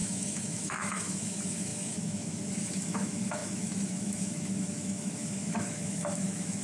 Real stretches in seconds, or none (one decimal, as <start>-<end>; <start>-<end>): none

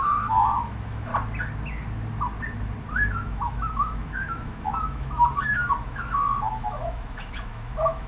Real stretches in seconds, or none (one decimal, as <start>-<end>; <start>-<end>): 1.1-2.9

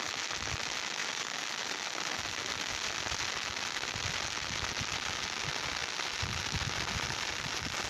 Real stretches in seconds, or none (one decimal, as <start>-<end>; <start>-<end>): 0.0-7.9